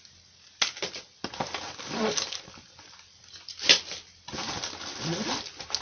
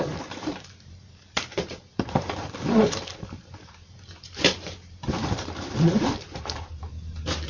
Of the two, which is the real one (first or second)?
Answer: first